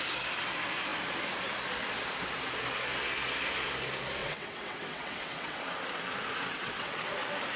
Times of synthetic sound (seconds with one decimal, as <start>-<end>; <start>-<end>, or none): 4.2-5.6; 6.5-7.1